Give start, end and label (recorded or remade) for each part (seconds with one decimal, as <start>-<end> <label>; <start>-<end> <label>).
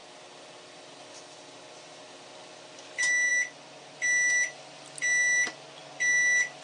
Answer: 0.0-6.6 recorded